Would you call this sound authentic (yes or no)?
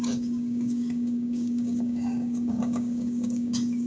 no